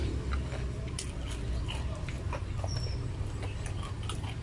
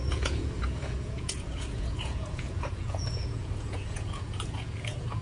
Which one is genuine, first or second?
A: first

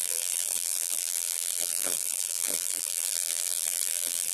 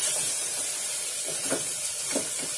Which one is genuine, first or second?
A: second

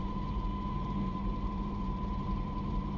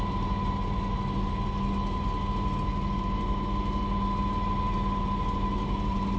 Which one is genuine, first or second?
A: second